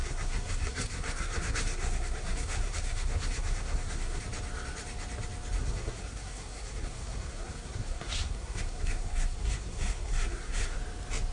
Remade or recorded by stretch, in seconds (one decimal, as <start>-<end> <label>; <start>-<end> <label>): 0.0-4.2 remade; 4.2-5.6 recorded; 5.6-10.8 remade; 10.8-11.3 recorded